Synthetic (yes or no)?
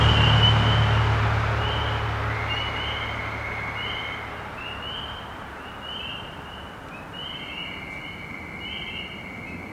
no